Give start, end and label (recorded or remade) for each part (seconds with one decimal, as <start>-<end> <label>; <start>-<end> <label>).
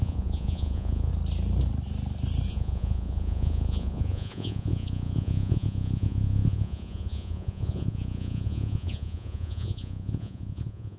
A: 0.0-1.1 remade; 1.1-2.5 recorded; 2.5-11.0 remade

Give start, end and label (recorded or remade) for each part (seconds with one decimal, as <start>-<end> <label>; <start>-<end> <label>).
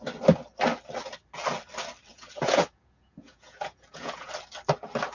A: 0.0-2.1 recorded; 2.1-4.3 remade; 4.3-5.1 recorded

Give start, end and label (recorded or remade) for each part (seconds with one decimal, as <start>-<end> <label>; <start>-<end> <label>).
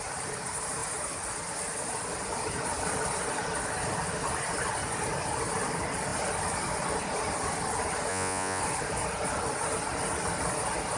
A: 0.0-8.1 recorded; 8.1-8.6 remade; 8.6-11.0 recorded